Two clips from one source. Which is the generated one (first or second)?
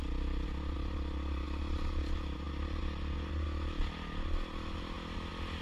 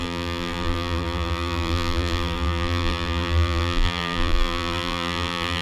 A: second